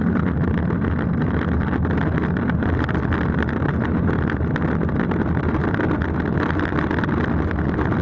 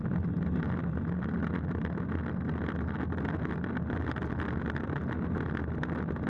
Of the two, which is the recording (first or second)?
second